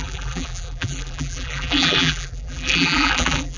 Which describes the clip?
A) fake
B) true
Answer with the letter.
A